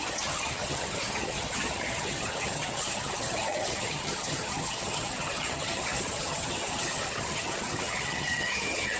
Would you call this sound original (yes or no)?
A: no